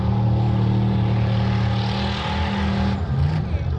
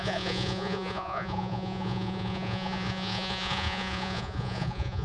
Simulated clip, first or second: second